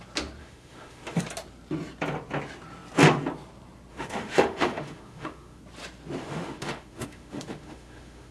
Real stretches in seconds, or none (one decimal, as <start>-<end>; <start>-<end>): 0.0-0.4; 1.2-3.9; 5.6-6.2